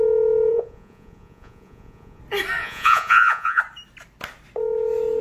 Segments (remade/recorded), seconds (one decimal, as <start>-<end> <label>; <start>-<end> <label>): 0.0-0.5 recorded; 0.5-2.2 remade; 2.2-2.6 recorded; 2.6-3.6 remade; 3.6-5.2 recorded